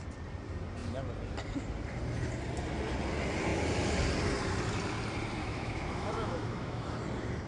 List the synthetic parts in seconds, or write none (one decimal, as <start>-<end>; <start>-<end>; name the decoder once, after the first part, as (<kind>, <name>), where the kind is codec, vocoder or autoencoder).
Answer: 5.4-6.9 (autoencoder, DAC-VAE)